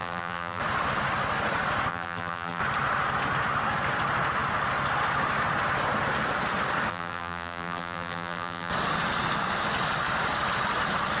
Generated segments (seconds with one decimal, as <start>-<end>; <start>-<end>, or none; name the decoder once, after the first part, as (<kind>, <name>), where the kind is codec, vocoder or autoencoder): 0.0-0.6 (vocoder, BigVGAN v2); 1.9-2.6; 6.9-8.7